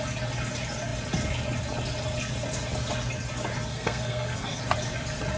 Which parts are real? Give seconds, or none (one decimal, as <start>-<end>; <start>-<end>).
0.0-3.7; 4.6-5.4